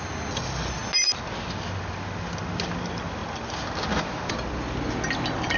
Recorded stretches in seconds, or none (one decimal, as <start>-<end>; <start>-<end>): 0.0-5.6